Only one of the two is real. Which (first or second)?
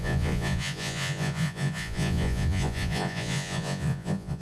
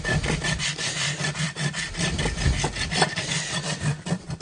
second